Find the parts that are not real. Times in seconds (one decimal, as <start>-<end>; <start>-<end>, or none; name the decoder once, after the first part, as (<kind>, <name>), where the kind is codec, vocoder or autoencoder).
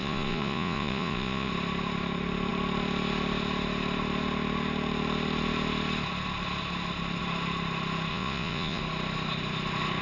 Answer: 0.0-1.5 (vocoder, Vocos); 8.1-8.8